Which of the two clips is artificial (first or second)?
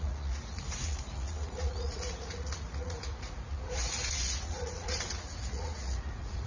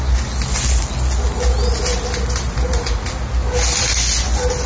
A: first